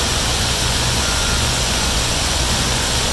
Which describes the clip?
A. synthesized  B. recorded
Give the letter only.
A